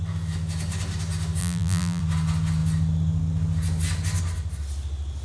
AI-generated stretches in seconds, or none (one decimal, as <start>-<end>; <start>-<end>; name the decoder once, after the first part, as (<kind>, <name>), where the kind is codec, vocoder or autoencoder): 1.4-2.0 (vocoder, BigVGAN v2)